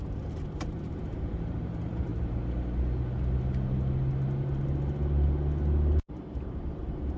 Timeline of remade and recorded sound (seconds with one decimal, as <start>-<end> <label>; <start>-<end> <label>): 0.0-2.1 remade; 2.1-6.1 recorded; 6.1-7.2 remade